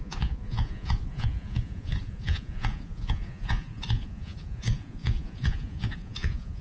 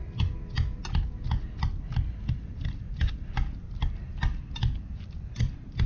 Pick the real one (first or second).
second